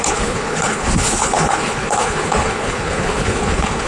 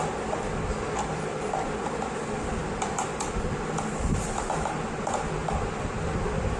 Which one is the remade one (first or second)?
first